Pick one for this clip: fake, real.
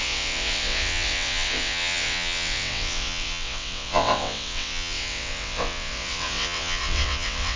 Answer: fake